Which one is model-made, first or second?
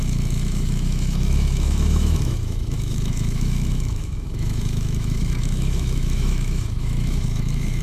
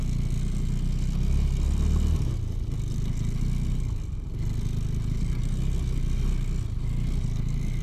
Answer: first